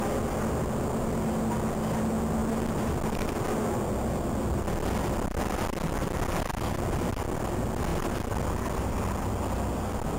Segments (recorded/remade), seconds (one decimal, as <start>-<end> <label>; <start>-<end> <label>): 0.0-10.2 recorded